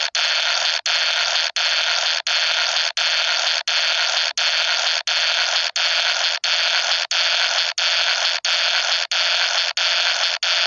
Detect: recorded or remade recorded